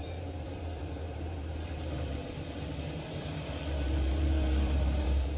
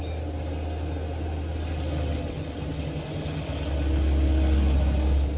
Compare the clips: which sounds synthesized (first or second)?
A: first